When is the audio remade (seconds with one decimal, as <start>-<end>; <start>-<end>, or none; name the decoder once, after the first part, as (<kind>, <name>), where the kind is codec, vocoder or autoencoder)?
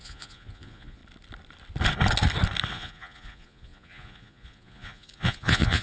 0.0-1.0 (vocoder, Vocos); 2.7-5.8